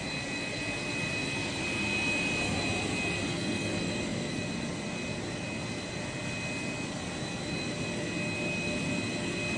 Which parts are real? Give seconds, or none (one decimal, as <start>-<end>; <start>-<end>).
0.0-9.6